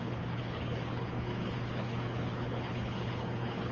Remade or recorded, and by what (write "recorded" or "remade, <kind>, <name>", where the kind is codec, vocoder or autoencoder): remade, codec, HILCodec